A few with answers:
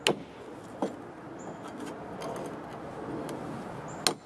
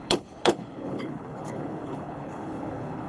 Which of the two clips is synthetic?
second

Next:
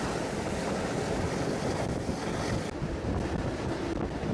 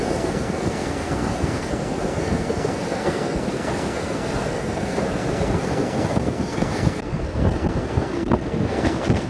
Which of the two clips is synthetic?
second